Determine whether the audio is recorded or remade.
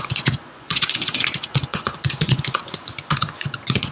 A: remade